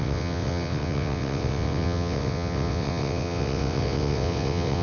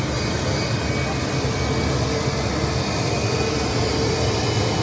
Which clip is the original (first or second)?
second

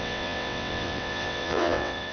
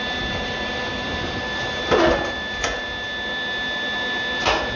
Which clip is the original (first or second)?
second